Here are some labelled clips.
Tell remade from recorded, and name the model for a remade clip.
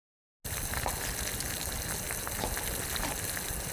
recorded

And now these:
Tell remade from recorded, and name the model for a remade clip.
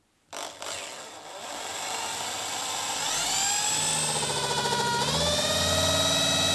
recorded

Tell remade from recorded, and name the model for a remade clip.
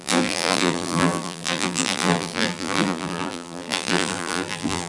remade, vocoder, BigVGAN v2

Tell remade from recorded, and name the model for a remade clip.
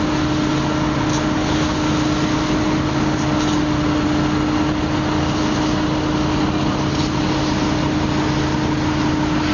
recorded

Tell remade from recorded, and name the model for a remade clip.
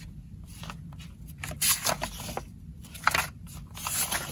recorded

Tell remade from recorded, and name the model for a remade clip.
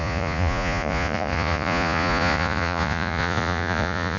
remade, vocoder, Vocos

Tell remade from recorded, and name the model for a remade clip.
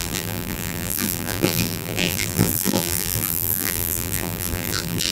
remade, vocoder, BigVGAN v2